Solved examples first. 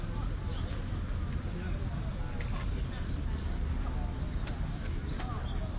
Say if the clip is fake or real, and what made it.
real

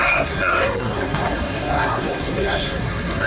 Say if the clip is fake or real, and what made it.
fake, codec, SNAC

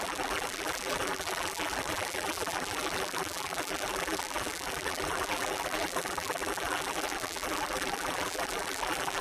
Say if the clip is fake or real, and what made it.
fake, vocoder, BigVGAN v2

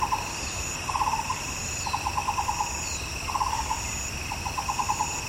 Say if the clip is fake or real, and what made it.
fake, vocoder, BigVGAN v2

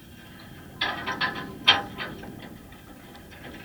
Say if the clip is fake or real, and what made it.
real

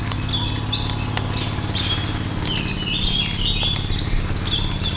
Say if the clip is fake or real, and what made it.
real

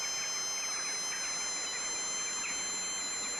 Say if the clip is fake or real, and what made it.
real